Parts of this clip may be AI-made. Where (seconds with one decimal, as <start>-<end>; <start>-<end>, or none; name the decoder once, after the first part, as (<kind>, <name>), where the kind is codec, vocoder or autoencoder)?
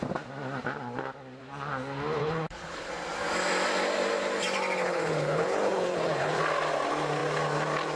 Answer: 2.2-2.9 (codec, HILCodec); 4.8-6.3